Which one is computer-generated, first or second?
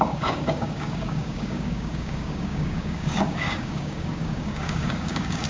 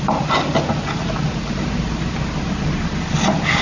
first